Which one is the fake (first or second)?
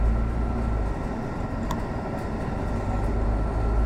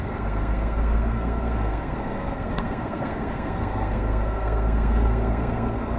second